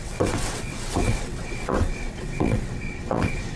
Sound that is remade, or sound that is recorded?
remade